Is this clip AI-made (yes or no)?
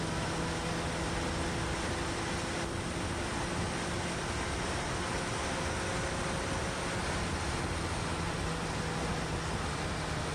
no